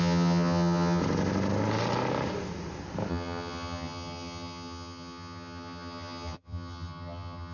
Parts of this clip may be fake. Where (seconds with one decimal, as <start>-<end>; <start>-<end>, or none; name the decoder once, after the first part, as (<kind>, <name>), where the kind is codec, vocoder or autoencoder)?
0.0-1.0 (vocoder, HiFi-GAN); 3.1-7.5